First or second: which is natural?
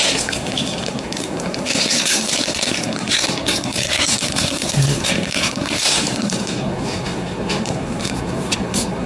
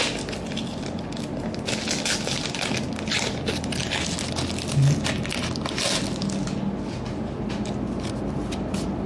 second